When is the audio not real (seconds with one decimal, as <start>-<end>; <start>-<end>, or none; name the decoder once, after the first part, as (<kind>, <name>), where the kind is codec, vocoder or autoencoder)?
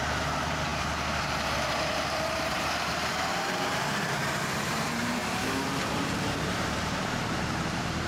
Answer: 0.0-5.2 (vocoder, BigVGAN v2); 5.8-8.1